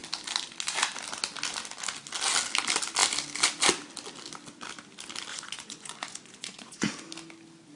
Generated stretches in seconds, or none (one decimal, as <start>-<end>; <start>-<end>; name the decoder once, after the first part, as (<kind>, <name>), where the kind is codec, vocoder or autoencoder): 5.3-6.9 (vocoder, Vocos)